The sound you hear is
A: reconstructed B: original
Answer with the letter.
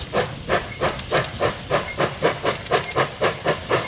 A